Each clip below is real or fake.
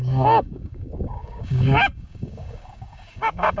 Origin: fake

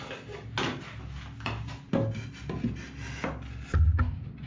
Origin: real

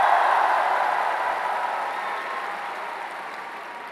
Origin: real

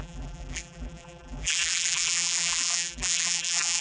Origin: fake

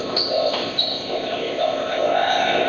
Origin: fake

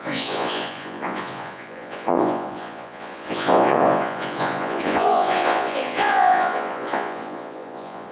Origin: fake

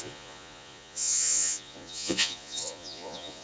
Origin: fake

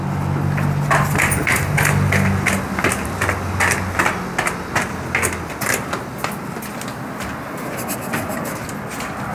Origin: real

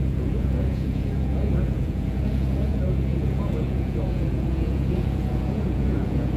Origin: fake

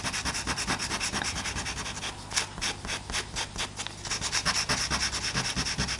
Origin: real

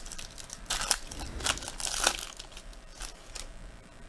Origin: real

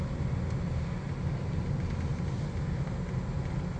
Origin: real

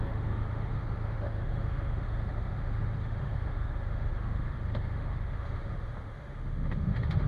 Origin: fake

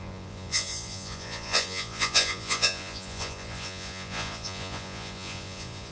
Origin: fake